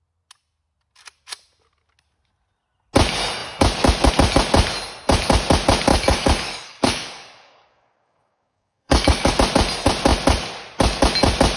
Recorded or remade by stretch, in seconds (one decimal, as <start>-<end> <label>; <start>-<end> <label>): 0.0-5.9 recorded; 5.9-9.3 remade; 9.3-11.6 recorded